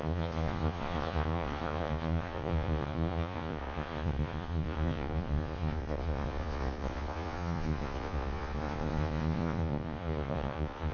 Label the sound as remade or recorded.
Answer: remade